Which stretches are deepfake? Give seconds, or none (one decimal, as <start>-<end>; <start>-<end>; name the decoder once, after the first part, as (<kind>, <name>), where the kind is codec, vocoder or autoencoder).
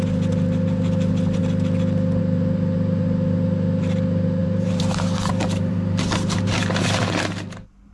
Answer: 4.4-6.5 (vocoder, BigVGAN v2)